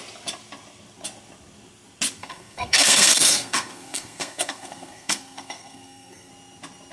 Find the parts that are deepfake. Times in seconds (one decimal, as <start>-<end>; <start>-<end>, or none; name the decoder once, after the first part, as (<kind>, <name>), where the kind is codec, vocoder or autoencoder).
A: 2.2-6.3 (codec, SNAC)